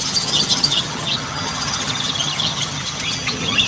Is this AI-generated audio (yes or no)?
yes